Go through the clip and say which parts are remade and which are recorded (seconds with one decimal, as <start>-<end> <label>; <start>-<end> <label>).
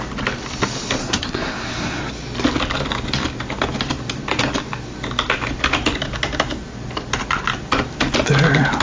0.0-1.0 recorded; 1.0-2.0 remade; 2.0-8.8 recorded